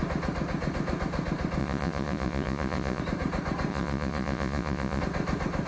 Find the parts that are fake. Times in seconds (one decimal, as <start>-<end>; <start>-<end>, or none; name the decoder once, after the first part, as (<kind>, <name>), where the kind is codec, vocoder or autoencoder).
1.6-3.0 (vocoder, Vocos); 3.7-5.0